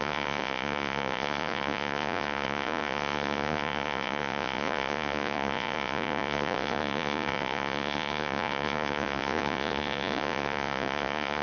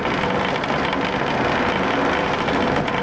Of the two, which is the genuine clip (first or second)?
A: second